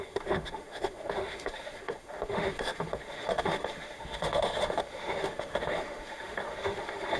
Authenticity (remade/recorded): remade